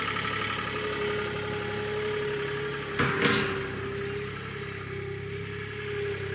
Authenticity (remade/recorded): recorded